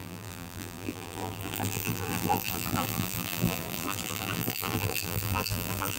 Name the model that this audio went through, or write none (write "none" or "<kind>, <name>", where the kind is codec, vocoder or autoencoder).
vocoder, BigVGAN v2